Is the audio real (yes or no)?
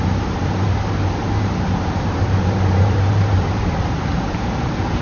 no